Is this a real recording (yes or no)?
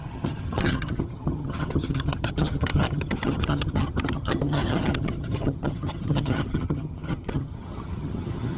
no